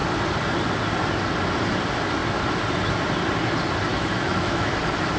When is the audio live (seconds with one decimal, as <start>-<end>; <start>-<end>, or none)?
0.0-3.9; 4.7-5.2

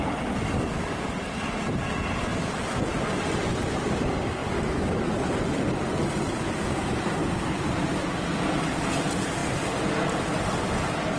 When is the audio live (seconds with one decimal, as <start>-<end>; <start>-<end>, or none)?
4.4-5.9; 7.2-7.8; 9.4-10.6

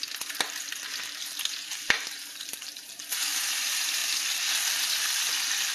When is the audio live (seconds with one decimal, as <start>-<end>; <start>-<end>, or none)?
0.0-1.5; 3.0-5.7

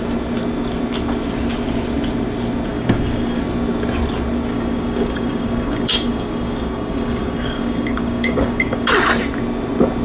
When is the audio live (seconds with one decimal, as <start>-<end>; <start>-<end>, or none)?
0.0-2.7; 3.4-4.5; 8.9-10.0

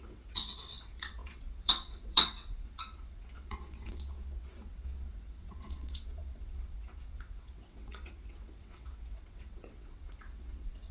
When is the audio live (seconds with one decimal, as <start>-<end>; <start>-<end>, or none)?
none

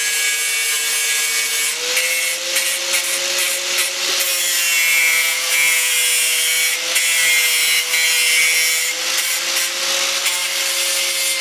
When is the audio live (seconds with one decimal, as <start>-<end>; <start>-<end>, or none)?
0.0-4.9; 5.9-11.4

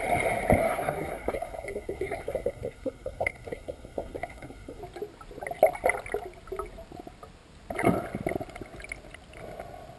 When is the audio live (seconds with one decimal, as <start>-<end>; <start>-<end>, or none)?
0.0-0.6; 4.8-10.0